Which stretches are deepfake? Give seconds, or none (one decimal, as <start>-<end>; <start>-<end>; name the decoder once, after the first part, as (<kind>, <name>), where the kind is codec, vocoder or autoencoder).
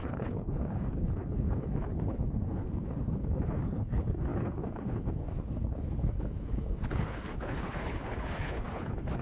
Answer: 0.0-9.2 (codec, HILCodec)